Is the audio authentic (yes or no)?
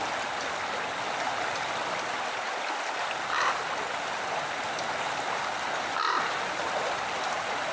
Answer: yes